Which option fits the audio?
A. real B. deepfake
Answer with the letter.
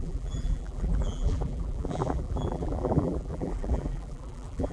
B